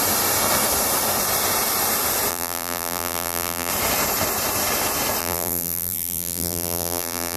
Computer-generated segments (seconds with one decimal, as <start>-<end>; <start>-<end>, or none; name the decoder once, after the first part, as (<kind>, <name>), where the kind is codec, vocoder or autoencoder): 2.3-3.7 (vocoder, BigVGAN v2); 5.2-7.4